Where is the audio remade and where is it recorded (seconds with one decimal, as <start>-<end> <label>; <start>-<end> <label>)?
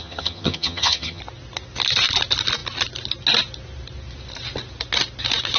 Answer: 0.0-1.2 remade; 1.2-5.6 recorded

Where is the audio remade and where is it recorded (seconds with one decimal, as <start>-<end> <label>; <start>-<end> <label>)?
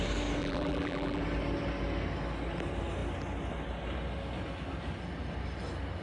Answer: 0.0-0.4 recorded; 0.4-1.2 remade; 1.2-6.0 recorded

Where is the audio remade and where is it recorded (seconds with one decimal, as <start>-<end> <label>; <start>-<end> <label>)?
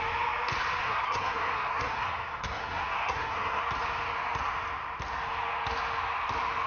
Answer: 0.0-0.8 recorded; 0.8-3.6 remade; 3.6-6.7 recorded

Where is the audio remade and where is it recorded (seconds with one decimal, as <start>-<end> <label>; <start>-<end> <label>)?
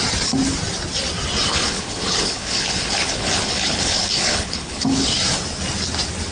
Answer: 0.0-1.5 recorded; 1.5-5.1 remade; 5.1-6.3 recorded